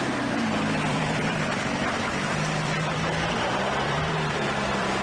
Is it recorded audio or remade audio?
remade